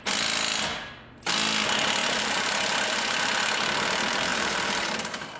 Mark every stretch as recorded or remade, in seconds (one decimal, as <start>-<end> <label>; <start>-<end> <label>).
0.0-2.0 recorded; 2.0-3.3 remade; 3.3-4.3 recorded; 4.3-5.4 remade